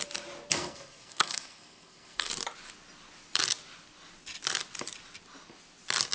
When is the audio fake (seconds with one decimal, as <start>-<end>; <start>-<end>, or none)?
0.5-2.3